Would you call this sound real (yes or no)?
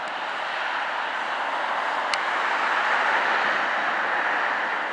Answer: yes